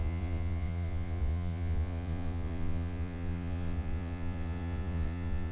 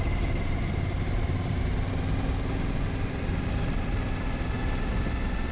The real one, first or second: second